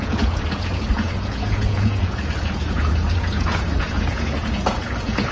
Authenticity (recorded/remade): remade